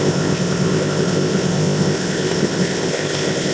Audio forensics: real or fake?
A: fake